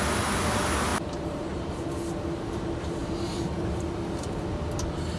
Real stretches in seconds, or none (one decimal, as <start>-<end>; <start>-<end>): 0.0-0.9; 1.6-3.0; 3.8-5.2